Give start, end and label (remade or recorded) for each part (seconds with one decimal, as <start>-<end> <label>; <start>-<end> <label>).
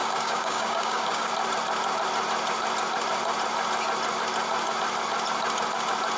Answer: 0.0-1.3 remade; 1.3-6.2 recorded